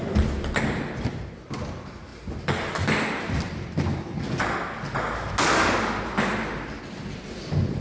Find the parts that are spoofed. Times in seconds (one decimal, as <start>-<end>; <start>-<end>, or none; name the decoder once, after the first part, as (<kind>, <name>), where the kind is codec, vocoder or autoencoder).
none